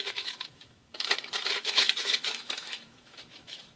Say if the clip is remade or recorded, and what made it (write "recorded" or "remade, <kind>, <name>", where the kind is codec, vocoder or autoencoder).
remade, autoencoder, DAC-VAE